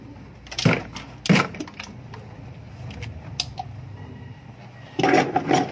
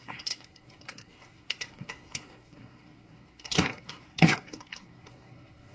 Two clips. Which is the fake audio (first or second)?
second